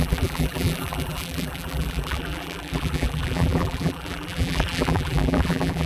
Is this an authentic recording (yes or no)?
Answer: no